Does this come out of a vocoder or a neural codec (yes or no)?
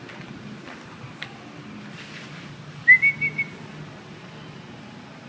no